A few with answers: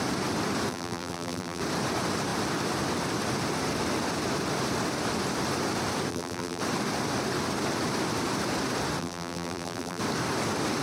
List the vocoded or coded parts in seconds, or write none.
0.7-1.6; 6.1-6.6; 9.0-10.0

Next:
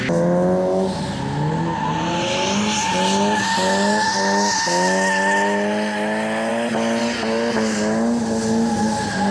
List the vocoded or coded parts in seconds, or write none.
none

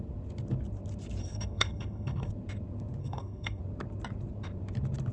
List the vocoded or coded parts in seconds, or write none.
1.2-2.3; 3.0-3.6

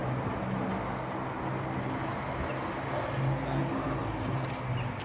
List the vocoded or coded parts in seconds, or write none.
none

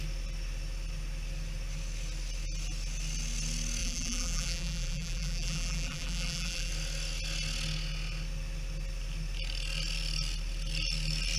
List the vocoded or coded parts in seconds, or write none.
3.8-6.7